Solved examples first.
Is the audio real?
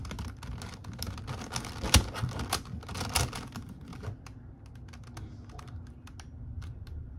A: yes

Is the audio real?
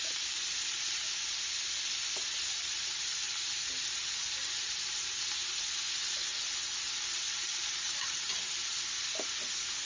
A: yes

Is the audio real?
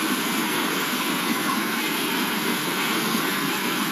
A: no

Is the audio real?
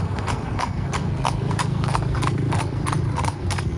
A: no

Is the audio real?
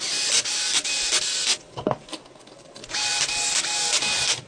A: yes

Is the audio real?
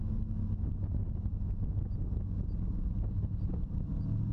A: yes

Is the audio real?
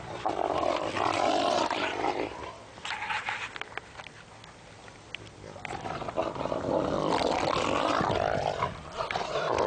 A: yes